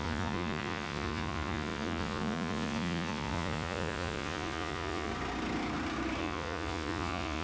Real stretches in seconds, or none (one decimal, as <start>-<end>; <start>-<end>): 5.1-6.2